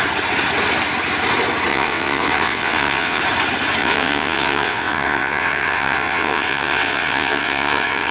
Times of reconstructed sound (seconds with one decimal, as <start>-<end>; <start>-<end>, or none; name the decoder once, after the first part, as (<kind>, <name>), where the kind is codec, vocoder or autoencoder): 1.7-3.2 (vocoder, WaveNeXt); 3.8-8.1